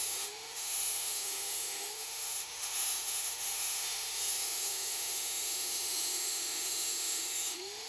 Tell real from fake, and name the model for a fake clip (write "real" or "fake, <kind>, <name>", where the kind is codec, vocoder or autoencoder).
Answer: fake, autoencoder, DAC-VAE